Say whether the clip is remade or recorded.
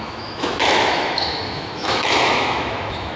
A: remade